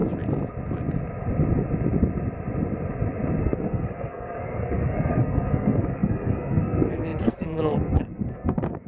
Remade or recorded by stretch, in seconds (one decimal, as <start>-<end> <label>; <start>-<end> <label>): 0.0-3.4 recorded; 3.4-8.9 remade